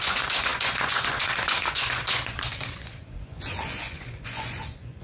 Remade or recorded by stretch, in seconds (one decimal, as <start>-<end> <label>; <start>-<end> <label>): 0.0-5.0 remade